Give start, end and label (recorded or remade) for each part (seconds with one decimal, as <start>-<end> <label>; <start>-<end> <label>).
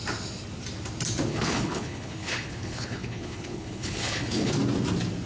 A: 0.0-1.3 recorded; 1.3-4.5 remade; 4.5-5.3 recorded